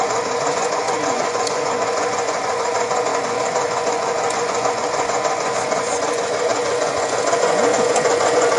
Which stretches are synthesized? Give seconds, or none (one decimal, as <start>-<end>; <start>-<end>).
0.0-8.6